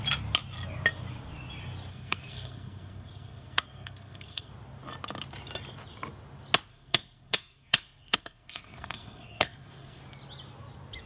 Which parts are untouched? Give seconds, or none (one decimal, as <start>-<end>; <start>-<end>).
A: 0.0-1.9; 4.5-6.7; 10.0-11.1

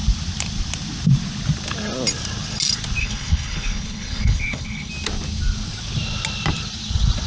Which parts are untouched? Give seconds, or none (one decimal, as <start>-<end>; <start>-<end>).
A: 0.0-3.0; 4.9-7.3